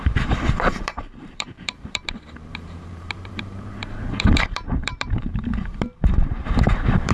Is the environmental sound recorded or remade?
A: remade